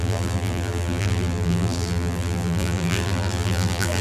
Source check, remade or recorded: remade